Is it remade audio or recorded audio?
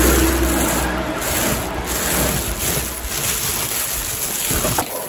recorded